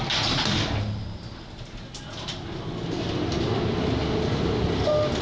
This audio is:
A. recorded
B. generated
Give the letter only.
A